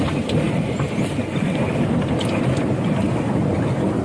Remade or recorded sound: recorded